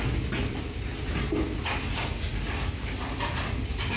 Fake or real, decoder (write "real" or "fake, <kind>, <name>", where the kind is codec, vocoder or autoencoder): real